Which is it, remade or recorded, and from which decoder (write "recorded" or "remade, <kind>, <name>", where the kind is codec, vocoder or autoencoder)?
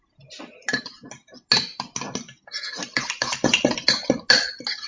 recorded